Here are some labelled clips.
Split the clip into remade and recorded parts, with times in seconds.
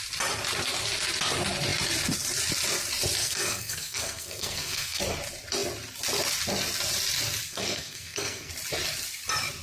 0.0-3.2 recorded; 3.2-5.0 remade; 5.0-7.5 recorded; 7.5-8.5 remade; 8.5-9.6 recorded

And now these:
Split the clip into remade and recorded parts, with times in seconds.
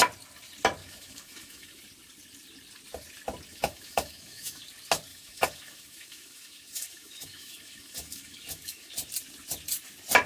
0.0-0.8 recorded; 0.8-1.8 remade; 1.8-3.5 recorded; 3.5-4.6 remade; 4.6-5.1 recorded; 5.1-8.9 remade; 8.9-10.3 recorded